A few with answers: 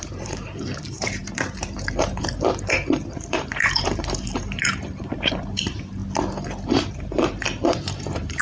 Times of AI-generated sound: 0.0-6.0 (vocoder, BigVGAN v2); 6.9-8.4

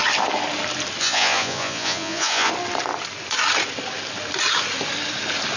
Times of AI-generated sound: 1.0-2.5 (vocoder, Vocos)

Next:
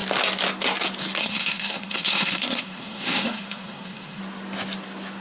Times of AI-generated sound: 1.2-4.2 (codec, SNAC)